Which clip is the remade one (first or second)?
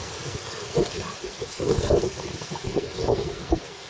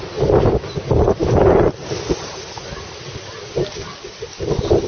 first